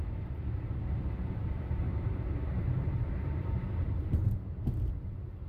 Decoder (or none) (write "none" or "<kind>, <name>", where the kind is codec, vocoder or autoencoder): vocoder, BigVGAN v2